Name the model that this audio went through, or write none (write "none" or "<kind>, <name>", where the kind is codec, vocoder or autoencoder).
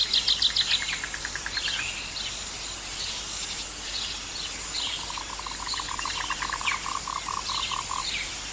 none